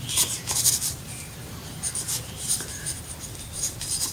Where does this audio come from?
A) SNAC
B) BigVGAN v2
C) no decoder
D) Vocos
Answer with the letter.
B